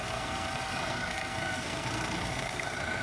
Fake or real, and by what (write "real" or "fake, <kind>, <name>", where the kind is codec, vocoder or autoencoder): fake, codec, SNAC